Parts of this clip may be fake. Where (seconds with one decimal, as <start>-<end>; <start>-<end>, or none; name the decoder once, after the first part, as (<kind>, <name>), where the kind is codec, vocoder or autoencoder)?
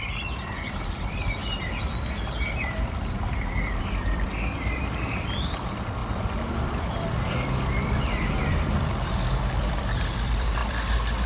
0.0-10.6 (vocoder, BigVGAN v2)